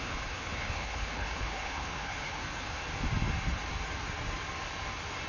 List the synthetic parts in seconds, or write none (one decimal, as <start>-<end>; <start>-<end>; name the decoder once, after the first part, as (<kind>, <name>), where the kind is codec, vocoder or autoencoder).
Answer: 0.0-2.8 (codec, HILCodec)